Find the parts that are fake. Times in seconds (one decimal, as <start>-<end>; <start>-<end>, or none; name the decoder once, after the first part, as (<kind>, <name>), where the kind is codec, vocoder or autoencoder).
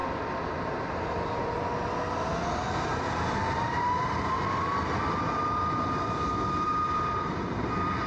none